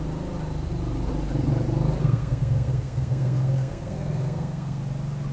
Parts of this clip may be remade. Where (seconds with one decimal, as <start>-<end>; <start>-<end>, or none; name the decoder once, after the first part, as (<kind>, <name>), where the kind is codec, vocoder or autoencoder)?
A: 2.0-4.8 (codec, SNAC)